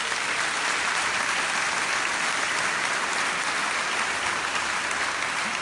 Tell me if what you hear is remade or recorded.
recorded